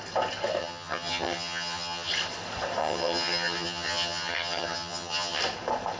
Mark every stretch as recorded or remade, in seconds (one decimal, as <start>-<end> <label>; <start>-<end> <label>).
0.0-0.6 recorded; 0.6-2.1 remade; 2.1-2.8 recorded; 2.8-5.4 remade; 5.4-6.0 recorded